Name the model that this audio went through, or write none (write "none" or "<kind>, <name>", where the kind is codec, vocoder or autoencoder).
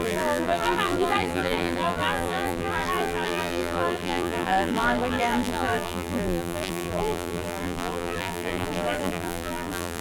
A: vocoder, BigVGAN v2